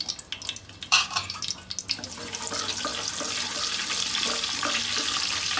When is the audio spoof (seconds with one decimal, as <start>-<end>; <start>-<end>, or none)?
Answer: 0.9-1.4